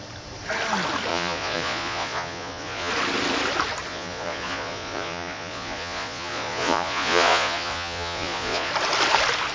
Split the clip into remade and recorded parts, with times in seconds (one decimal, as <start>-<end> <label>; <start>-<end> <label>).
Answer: 0.0-1.1 recorded; 1.1-2.9 remade; 2.9-3.9 recorded; 3.9-8.7 remade; 8.7-9.5 recorded